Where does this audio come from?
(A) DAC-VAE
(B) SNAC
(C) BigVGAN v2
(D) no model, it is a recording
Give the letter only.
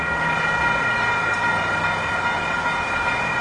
D